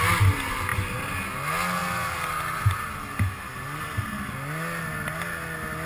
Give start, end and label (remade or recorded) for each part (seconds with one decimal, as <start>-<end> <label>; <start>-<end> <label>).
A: 0.0-5.9 recorded